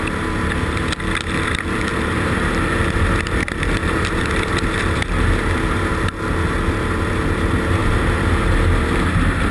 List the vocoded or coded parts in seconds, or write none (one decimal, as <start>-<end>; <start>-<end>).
7.8-8.4